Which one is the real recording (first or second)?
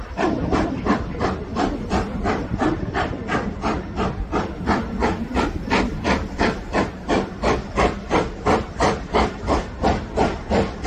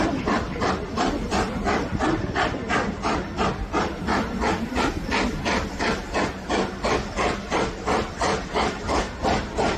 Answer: second